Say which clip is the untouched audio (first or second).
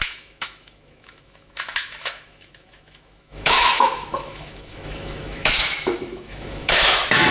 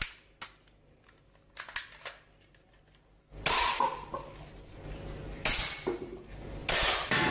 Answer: second